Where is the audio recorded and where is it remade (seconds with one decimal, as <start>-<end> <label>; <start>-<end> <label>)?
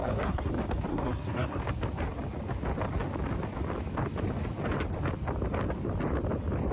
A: 0.0-0.5 remade; 0.5-0.9 recorded; 0.9-1.6 remade; 1.6-6.7 recorded